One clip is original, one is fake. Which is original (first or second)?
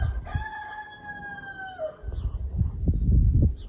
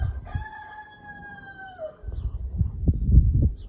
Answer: first